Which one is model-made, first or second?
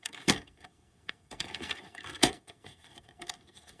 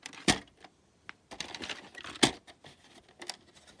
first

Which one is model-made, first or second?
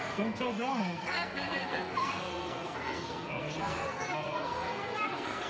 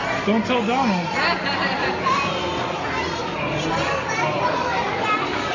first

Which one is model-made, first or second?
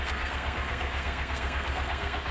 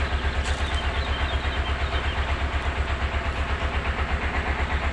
first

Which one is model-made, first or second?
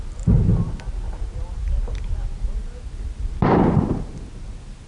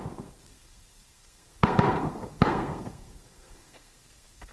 second